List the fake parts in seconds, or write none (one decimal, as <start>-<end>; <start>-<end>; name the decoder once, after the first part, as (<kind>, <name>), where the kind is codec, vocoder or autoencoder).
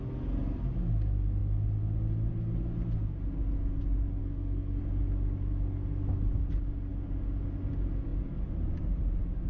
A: 4.2-4.8 (codec, SNAC)